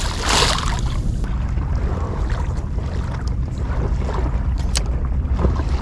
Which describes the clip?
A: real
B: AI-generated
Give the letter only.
A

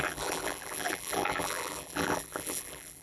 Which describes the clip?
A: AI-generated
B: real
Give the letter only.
A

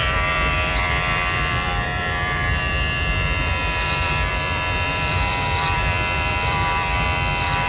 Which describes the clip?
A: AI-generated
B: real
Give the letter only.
A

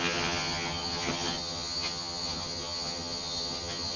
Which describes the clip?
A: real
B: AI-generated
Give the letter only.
B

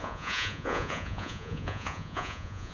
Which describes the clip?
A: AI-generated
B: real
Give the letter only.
A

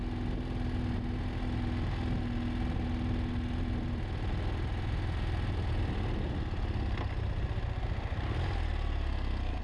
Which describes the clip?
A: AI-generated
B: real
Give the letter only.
B